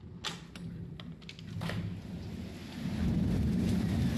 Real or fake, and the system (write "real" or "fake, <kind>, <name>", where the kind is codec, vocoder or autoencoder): real